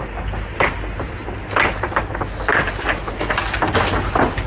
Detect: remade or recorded recorded